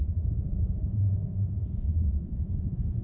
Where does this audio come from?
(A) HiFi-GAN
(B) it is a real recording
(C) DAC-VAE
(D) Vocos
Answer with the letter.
D